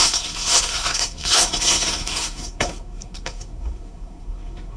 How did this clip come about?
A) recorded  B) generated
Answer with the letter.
B